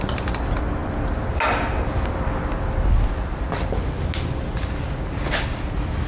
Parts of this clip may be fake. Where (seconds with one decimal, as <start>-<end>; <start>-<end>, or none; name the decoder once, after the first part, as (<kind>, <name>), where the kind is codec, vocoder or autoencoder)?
none